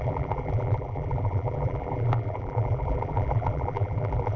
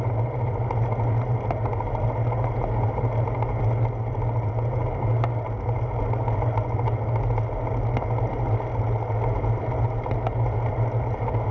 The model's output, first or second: first